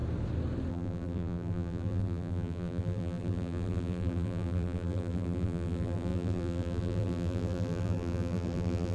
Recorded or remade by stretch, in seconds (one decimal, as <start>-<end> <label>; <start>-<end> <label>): 0.0-0.7 recorded; 0.7-8.9 remade